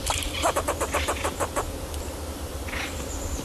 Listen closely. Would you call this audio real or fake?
real